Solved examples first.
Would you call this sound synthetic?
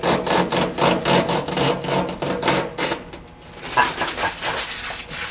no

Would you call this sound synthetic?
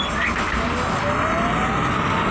no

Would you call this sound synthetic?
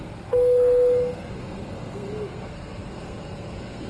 yes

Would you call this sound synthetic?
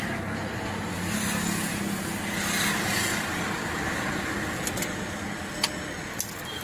no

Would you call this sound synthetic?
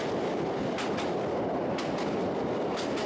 no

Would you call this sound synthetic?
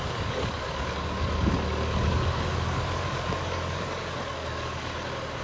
yes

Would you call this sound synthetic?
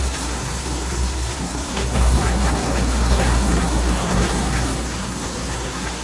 yes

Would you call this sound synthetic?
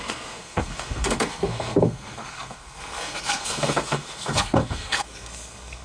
yes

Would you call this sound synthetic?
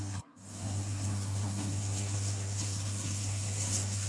yes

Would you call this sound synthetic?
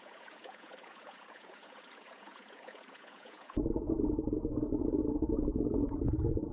yes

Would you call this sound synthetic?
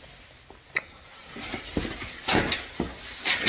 no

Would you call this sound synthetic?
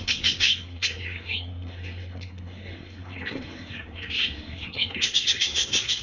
yes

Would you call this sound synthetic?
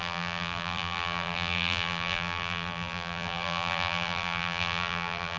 yes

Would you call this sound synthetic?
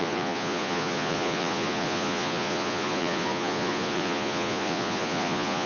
yes